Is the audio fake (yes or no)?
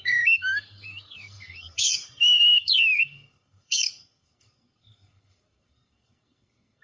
yes